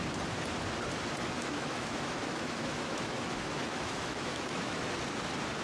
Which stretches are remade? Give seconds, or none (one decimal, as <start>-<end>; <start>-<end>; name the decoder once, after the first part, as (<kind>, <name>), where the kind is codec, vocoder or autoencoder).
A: 1.4-4.8 (autoencoder, DAC-VAE)